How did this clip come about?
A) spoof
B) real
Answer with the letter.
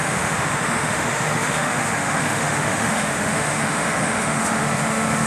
A